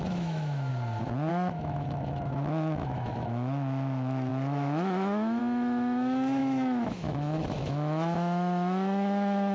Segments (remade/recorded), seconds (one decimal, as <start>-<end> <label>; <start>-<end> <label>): 0.0-0.7 remade; 0.7-1.3 recorded; 1.3-9.5 remade